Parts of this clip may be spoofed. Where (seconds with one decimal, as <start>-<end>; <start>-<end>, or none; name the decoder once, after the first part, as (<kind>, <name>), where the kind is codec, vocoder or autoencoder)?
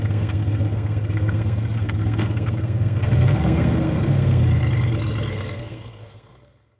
0.0-4.4 (codec, SNAC); 5.3-6.8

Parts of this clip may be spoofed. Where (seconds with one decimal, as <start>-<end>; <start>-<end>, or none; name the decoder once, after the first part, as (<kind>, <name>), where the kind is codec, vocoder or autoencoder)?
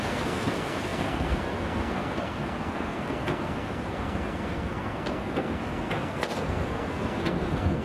0.0-7.8 (codec, SNAC)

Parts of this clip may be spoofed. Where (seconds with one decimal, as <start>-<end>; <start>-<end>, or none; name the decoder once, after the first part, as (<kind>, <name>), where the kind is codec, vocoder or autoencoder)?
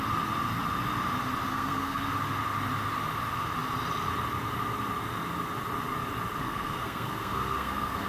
1.5-2.1 (codec, SNAC); 6.4-8.1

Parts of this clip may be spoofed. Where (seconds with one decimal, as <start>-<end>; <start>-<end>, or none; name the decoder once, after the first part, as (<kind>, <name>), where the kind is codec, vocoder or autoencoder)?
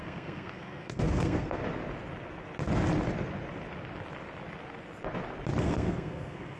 0.0-1.6 (codec, SNAC); 5.6-6.6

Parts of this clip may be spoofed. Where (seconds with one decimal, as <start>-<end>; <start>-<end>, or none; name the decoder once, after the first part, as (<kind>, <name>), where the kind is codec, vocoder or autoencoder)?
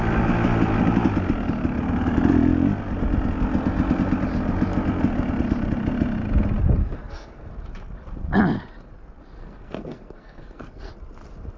6.8-7.5 (codec, SNAC); 9.4-10.9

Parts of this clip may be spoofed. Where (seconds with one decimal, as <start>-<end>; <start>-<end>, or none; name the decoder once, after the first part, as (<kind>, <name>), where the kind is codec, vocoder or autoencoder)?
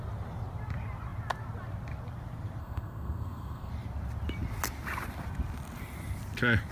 2.6-3.7 (codec, SNAC)